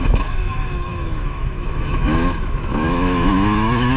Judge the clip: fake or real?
fake